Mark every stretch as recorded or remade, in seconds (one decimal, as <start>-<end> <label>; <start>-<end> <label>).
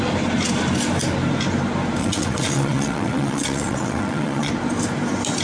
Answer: 0.0-2.0 recorded; 2.0-4.5 remade; 4.5-5.4 recorded